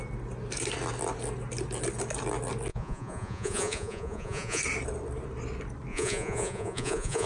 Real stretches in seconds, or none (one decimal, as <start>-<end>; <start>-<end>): 0.0-2.7; 4.6-5.9